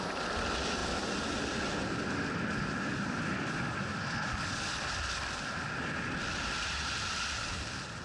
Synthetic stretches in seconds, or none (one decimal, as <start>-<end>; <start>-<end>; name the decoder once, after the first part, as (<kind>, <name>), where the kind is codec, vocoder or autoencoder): none